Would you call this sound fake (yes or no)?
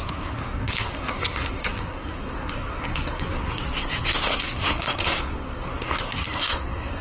yes